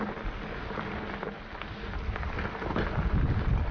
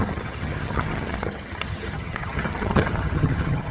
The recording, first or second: first